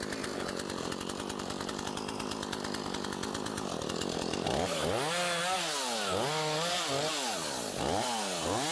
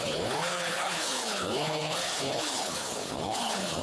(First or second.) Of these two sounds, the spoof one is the second